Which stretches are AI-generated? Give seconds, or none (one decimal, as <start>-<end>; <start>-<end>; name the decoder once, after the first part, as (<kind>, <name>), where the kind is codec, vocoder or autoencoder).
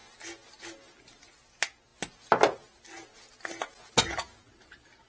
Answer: none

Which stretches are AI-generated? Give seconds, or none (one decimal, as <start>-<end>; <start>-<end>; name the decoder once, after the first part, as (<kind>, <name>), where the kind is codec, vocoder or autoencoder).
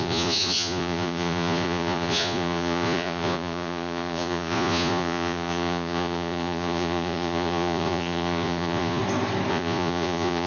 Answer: 0.0-9.0 (vocoder, Vocos); 9.5-10.5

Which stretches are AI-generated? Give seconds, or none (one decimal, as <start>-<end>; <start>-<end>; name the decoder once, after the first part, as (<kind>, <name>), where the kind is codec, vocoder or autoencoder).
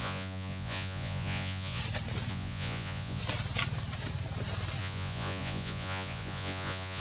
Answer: 0.0-1.8 (vocoder, Vocos); 2.3-3.2; 4.8-7.0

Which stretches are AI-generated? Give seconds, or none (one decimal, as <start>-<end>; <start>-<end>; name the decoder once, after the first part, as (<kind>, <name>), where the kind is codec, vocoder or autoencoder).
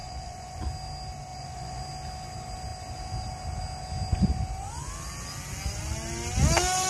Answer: 0.0-0.6 (vocoder, Vocos); 1.3-1.8